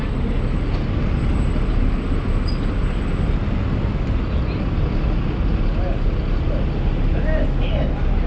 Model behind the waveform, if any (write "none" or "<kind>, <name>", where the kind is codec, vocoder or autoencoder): none